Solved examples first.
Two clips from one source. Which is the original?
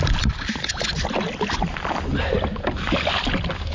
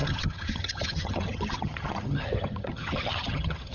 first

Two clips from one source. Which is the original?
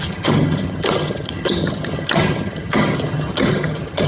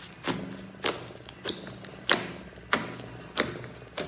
second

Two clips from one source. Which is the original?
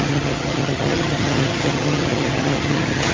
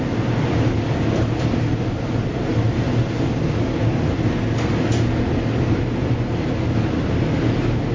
second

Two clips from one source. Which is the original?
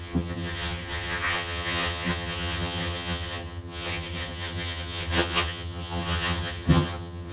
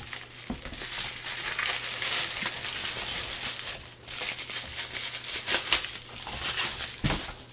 second